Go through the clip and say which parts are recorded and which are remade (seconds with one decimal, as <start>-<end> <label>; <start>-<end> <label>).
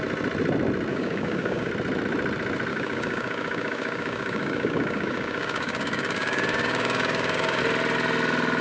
0.0-0.9 recorded; 0.9-1.7 remade; 1.7-2.7 recorded; 2.7-7.6 remade; 7.6-8.6 recorded